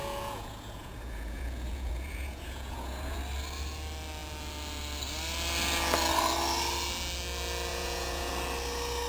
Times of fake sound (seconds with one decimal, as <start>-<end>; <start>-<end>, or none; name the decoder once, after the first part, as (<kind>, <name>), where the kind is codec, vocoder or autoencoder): 0.0-3.2 (vocoder, Vocos); 7.7-8.3